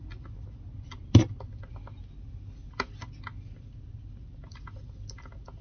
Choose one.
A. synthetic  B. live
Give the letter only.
B